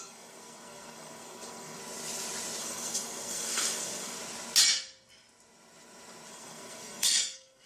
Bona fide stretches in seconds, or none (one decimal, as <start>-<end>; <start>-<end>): 1.8-2.6; 4.2-6.3